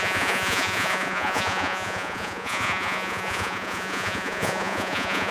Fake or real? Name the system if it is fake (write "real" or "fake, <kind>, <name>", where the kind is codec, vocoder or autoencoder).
fake, vocoder, Vocos